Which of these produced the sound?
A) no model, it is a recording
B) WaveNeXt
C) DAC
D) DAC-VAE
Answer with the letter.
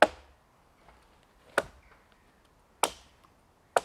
A